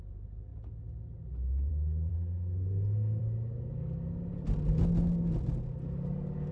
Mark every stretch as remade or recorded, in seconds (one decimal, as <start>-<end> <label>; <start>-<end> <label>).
0.0-2.1 recorded; 2.1-3.2 remade; 3.2-6.5 recorded